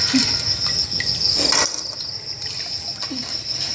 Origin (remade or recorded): recorded